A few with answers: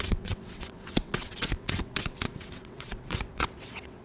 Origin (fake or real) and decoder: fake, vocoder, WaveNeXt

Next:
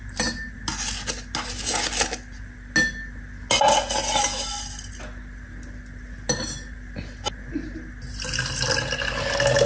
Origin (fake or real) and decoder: real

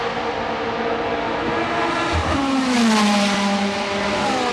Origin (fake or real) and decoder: real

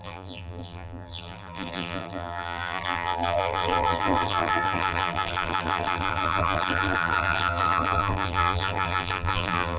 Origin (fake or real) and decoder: fake, vocoder, BigVGAN v2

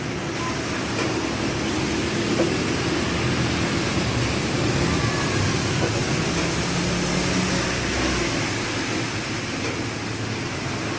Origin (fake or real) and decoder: real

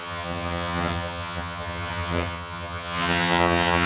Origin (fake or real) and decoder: fake, vocoder, HiFi-GAN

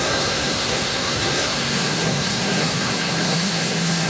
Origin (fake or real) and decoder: fake, codec, SNAC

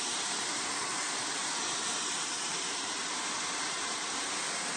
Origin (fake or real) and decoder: fake, vocoder, BigVGAN v2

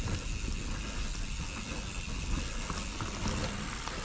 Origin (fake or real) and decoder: real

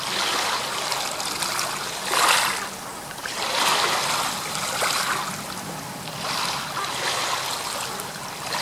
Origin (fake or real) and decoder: real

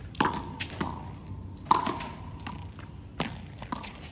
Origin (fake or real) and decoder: real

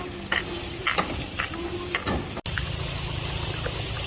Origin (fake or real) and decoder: real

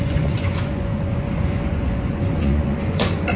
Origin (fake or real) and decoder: fake, vocoder, Vocos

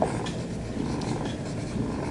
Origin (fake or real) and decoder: real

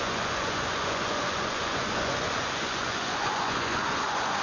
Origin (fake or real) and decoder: fake, vocoder, Vocos